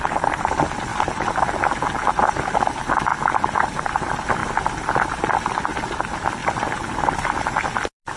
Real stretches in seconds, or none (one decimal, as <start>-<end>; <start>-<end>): 0.9-2.1

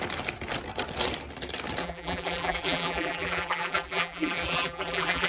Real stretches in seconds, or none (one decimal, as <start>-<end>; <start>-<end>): 0.0-1.8

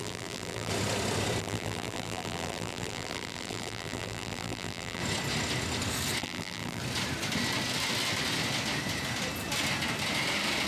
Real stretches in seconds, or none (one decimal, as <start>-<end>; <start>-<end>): 0.7-1.4; 5.0-6.2; 6.8-10.7